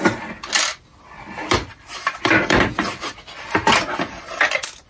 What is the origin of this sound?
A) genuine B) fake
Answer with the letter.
A